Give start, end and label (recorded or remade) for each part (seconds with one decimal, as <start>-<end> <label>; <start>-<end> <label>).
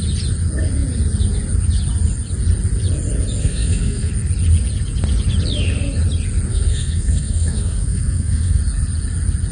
0.0-3.4 recorded; 3.4-4.1 remade; 4.1-6.5 recorded; 6.5-8.6 remade; 8.6-9.5 recorded